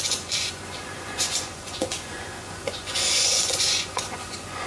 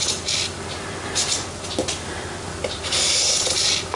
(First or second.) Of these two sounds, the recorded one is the second